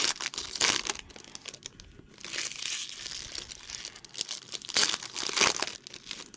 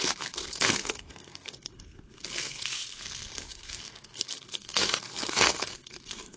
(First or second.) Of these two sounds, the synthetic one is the second